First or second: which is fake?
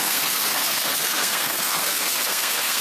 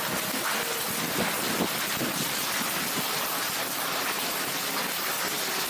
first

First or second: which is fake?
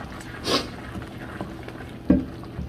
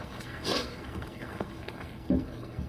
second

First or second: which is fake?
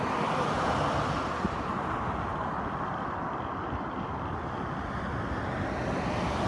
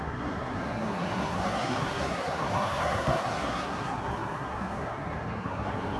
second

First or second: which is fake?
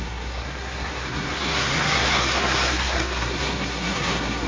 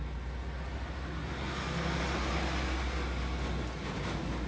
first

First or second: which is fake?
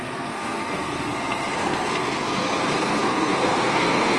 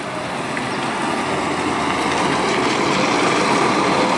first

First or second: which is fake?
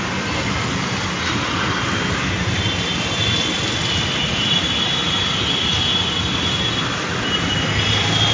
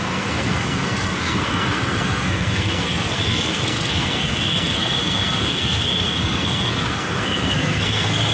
second